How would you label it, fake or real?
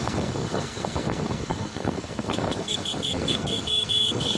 fake